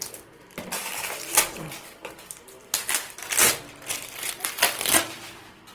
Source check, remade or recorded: recorded